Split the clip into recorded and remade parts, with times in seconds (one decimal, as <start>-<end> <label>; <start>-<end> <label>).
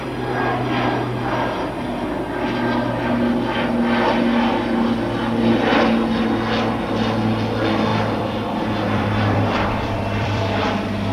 0.0-7.9 recorded; 7.9-11.1 remade